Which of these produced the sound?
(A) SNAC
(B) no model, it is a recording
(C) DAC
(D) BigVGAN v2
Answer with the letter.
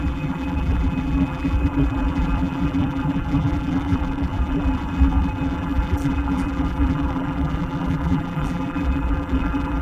D